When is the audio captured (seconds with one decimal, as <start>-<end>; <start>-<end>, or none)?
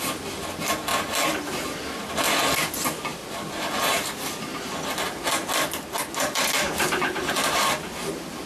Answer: 0.0-8.5